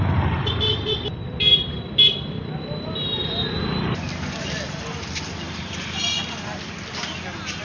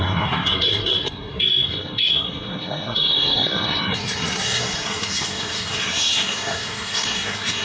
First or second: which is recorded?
first